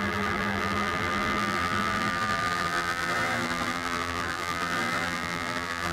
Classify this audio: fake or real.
fake